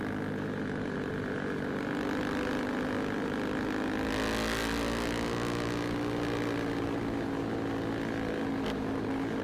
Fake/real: real